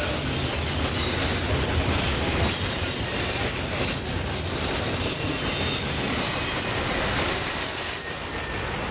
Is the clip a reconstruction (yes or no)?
no